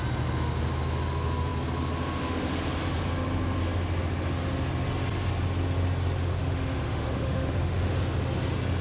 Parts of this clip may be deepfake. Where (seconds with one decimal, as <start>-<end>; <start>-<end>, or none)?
6.2-8.0